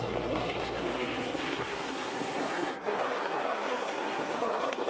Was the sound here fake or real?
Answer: fake